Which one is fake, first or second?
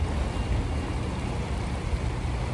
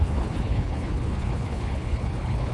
second